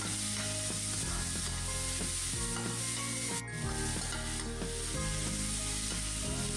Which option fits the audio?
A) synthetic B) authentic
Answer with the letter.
B